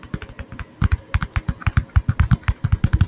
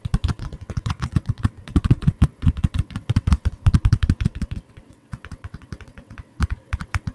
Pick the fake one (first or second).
second